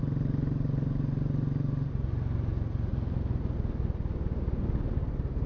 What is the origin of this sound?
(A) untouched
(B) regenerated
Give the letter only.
A